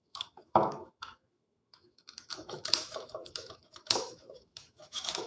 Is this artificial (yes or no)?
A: yes